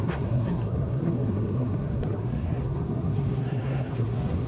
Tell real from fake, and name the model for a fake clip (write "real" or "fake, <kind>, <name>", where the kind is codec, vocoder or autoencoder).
fake, codec, SNAC